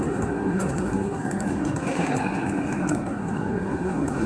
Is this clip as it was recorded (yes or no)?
no